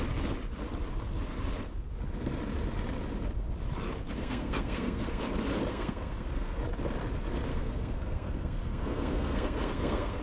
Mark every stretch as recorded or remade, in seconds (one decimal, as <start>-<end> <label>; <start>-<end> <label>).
0.0-4.2 recorded; 4.2-5.2 remade; 5.2-5.7 recorded; 5.7-6.6 remade; 6.6-7.5 recorded; 7.5-10.2 remade